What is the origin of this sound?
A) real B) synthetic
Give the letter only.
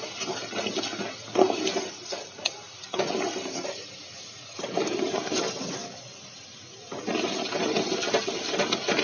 A